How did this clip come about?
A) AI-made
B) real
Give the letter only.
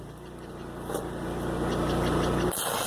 B